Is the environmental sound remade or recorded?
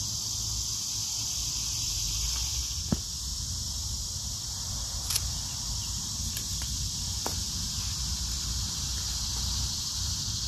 recorded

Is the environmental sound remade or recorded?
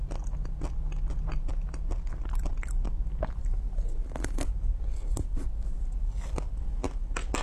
recorded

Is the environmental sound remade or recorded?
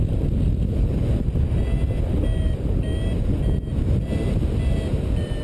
recorded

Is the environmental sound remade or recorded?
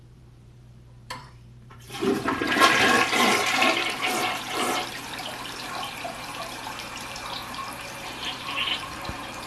remade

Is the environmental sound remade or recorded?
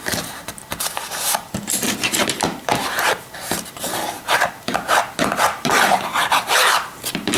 remade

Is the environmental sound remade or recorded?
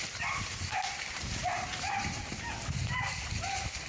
remade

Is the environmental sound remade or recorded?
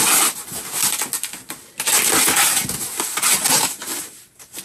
recorded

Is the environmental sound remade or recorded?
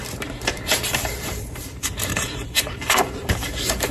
remade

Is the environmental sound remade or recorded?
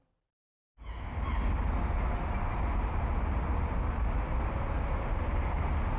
recorded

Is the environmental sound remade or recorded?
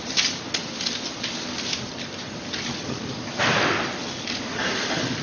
recorded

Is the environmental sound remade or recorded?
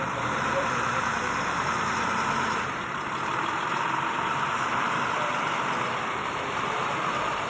remade